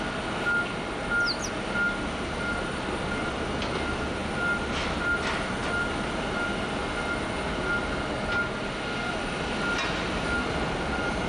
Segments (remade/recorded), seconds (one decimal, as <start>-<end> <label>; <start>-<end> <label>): 0.0-11.3 recorded